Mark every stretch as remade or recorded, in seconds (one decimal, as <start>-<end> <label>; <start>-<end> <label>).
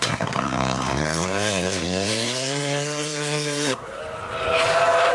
0.0-4.0 remade; 4.0-5.1 recorded